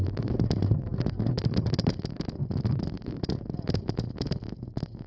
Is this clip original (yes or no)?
yes